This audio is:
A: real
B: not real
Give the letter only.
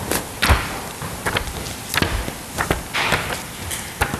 A